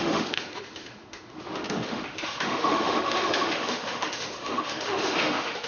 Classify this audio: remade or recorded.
remade